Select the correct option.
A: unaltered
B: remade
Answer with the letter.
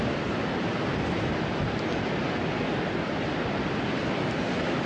A